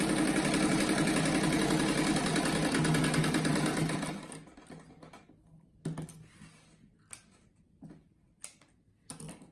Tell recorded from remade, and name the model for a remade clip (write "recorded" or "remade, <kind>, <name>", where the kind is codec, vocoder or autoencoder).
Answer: recorded